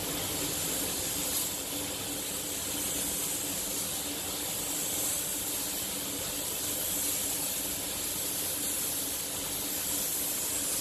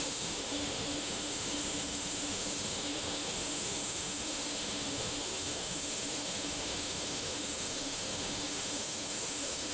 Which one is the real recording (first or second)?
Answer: first